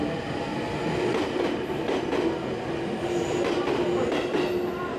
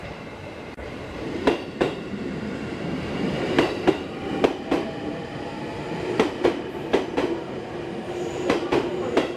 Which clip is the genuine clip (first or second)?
first